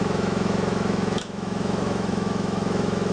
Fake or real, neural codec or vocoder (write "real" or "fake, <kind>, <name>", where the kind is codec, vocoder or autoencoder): fake, autoencoder, DAC-VAE